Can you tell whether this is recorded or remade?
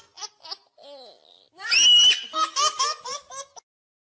recorded